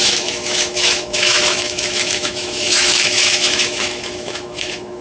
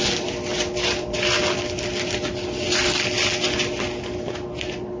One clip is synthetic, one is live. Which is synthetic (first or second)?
first